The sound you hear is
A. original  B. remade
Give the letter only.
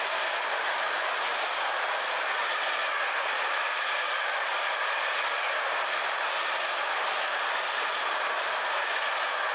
A